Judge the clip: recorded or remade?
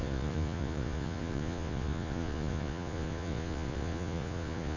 remade